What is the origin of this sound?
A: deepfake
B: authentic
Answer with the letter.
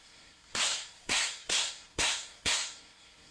A